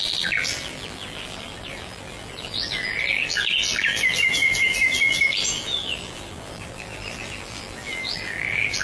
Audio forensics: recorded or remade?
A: remade